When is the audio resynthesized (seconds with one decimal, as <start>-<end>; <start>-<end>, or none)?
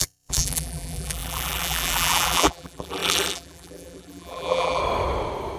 0.0-4.8